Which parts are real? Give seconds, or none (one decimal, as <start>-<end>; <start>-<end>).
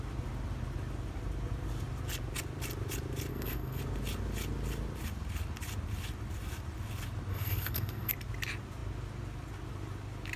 0.0-3.3; 3.8-7.3; 8.1-10.4